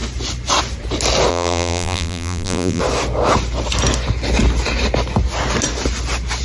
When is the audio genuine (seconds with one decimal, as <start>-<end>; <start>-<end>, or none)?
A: 0.0-1.3; 2.8-6.4

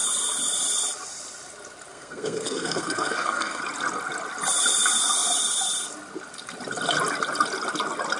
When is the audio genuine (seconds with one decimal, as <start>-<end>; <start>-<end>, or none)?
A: 0.0-1.9; 3.6-8.2

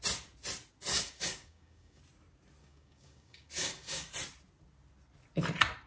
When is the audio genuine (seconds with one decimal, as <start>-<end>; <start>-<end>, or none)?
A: 0.0-0.9; 2.0-2.6; 4.1-5.9